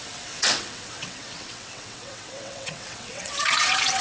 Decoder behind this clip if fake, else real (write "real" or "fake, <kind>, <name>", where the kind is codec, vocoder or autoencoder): fake, vocoder, WaveNeXt